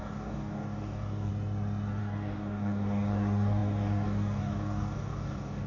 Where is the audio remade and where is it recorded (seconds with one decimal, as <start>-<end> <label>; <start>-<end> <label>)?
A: 0.0-1.3 remade; 1.3-2.0 recorded; 2.0-5.7 remade